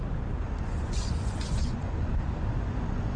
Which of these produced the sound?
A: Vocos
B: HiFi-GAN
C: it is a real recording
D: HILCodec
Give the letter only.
A